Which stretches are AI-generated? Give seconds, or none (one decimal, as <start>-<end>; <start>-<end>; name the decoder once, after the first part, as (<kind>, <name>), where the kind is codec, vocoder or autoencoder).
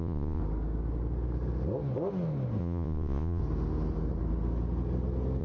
0.0-0.4 (vocoder, Vocos); 2.6-3.4